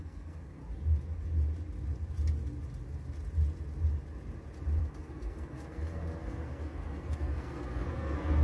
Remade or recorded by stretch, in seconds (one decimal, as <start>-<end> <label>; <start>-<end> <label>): 0.0-0.6 remade; 0.6-4.8 recorded; 4.8-8.4 remade